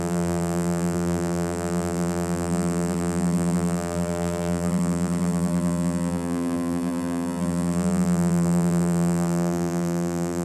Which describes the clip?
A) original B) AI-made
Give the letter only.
B